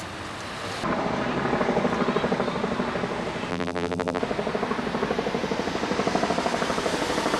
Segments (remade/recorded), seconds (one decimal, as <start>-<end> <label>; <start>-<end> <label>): 0.0-3.5 recorded; 3.5-4.2 remade; 4.2-7.4 recorded

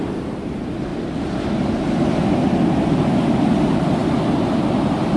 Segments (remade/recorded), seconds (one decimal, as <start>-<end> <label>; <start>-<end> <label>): 0.0-5.2 recorded

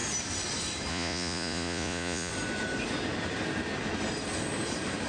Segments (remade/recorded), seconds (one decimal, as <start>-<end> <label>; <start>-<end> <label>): 0.0-0.9 recorded; 0.9-2.3 remade; 2.3-5.1 recorded

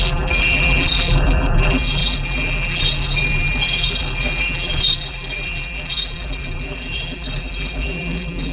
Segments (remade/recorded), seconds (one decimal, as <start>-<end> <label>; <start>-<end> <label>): 0.0-8.5 remade

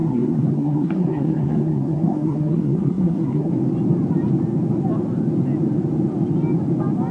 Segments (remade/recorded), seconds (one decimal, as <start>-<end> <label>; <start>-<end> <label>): 0.0-3.5 remade; 3.5-7.1 recorded

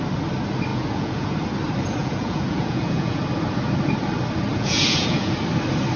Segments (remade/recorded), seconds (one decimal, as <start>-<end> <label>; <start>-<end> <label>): 0.0-0.7 recorded; 0.7-1.3 remade; 1.3-2.0 recorded; 2.0-3.2 remade; 3.2-4.5 recorded; 4.5-5.4 remade; 5.4-6.0 recorded

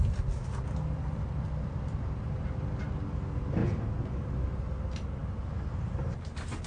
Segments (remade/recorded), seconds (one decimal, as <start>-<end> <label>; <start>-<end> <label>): 0.0-6.7 recorded